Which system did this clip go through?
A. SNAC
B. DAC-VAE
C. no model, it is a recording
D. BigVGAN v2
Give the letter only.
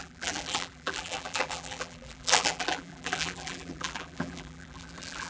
D